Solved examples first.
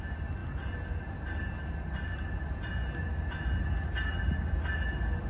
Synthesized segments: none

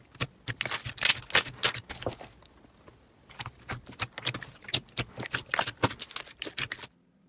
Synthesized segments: none

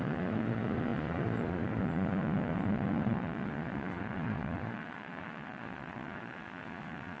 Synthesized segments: 0.0-7.2